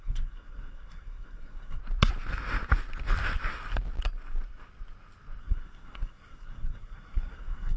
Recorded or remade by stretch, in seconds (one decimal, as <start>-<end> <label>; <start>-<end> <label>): 0.0-1.8 remade; 1.8-5.4 recorded; 5.4-7.8 remade

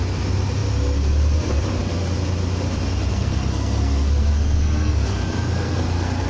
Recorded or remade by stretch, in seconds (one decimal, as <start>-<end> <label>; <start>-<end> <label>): 0.0-3.1 recorded; 3.1-6.3 remade